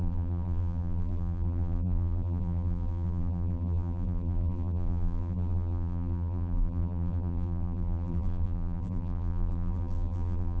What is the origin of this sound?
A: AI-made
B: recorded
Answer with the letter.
A